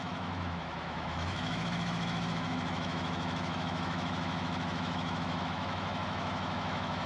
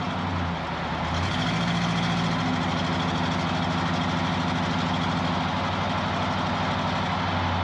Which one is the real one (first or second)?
second